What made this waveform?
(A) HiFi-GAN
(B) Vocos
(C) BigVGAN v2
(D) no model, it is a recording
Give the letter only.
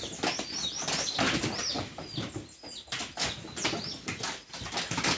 D